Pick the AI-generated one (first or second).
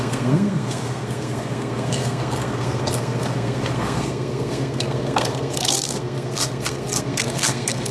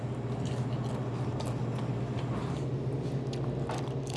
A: first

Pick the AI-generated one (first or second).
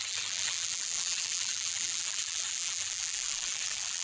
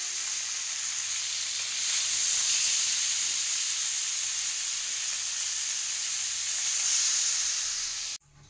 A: first